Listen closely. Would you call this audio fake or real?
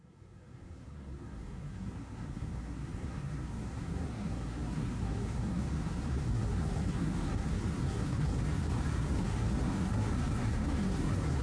fake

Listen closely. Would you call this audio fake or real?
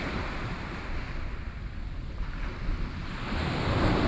real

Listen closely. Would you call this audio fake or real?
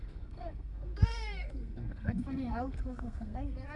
fake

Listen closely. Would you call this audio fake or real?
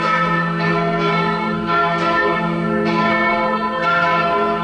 fake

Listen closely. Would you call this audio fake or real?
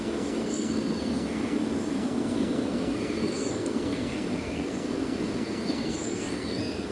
fake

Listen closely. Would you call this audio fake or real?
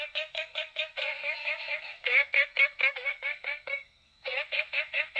fake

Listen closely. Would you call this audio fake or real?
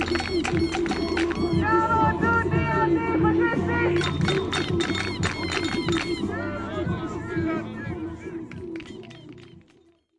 real